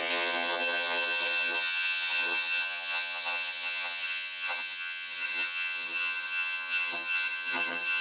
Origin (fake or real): fake